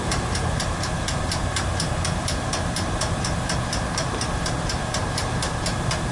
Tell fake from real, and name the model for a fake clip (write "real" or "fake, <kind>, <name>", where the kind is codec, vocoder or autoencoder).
fake, vocoder, BigVGAN v2